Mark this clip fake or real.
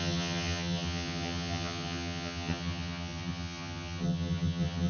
fake